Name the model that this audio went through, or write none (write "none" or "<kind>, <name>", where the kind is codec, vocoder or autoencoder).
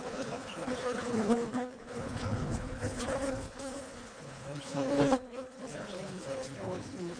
codec, HILCodec